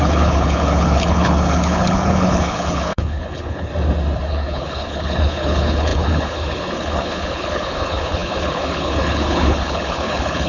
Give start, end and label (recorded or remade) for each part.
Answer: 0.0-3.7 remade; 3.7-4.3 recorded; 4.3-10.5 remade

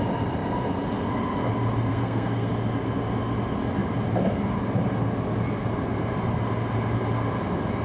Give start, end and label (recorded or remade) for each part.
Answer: 0.0-1.9 recorded; 1.9-2.5 remade; 2.5-7.8 recorded

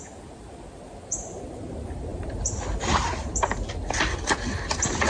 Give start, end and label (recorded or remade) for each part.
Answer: 0.0-5.1 recorded